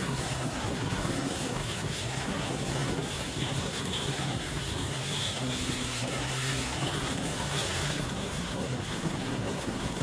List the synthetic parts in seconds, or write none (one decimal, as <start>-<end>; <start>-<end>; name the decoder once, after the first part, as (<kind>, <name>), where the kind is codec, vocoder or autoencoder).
0.0-10.0 (codec, SNAC)